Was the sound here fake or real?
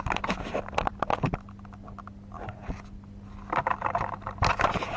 real